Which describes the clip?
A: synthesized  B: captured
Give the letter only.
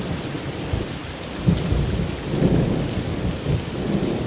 B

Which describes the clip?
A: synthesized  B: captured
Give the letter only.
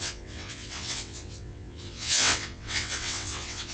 A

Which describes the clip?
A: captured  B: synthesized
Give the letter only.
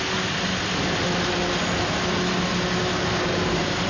A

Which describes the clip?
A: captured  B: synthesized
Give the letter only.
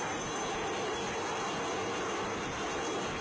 B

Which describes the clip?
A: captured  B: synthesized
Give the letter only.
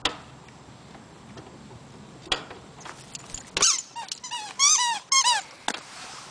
A